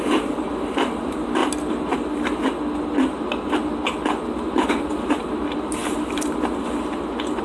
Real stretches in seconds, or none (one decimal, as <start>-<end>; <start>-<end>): 1.4-4.4